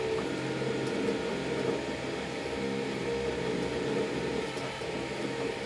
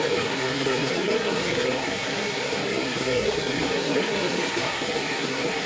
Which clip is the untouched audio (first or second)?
first